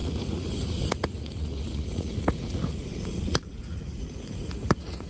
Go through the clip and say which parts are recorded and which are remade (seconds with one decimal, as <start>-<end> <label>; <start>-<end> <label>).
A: 0.0-5.1 remade

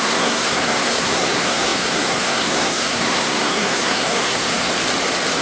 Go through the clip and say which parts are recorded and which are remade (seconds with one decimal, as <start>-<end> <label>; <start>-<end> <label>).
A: 0.0-4.7 remade; 4.7-5.4 recorded